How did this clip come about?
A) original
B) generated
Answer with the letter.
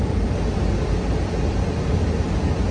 A